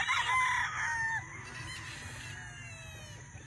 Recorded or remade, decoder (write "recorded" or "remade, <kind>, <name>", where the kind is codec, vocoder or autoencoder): recorded